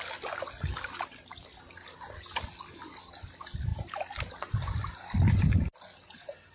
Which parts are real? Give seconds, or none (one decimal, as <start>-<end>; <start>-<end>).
0.0-6.5